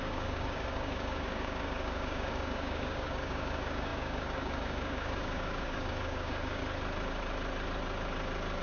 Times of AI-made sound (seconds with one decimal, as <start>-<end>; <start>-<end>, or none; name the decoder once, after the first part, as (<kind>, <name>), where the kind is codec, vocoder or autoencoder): 0.0-6.6 (codec, DAC)